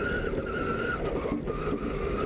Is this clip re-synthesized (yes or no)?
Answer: no